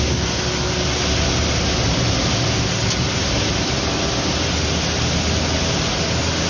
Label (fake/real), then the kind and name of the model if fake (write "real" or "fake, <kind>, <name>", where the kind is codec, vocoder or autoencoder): real